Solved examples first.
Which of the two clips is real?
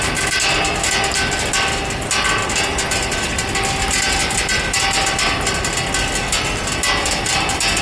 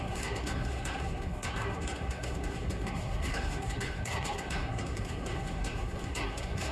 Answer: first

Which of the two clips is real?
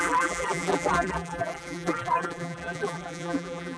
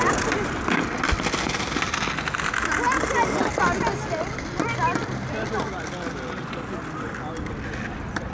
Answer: second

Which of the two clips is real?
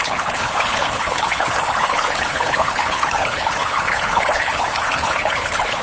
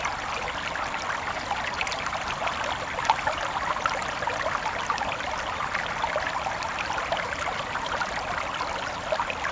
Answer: second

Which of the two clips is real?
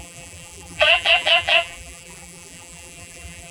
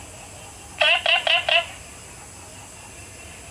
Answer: second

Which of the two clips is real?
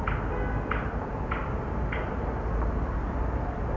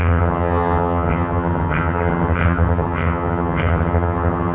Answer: first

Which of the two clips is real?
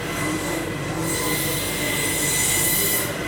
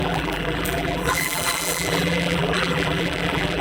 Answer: first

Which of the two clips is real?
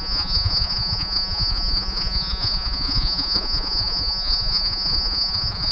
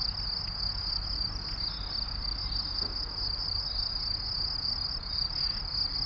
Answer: second